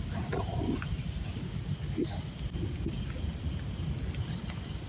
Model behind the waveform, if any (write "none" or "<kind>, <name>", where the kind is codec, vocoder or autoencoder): none